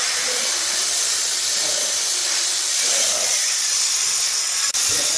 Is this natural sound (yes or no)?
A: yes